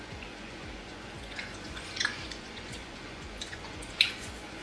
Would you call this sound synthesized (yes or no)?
yes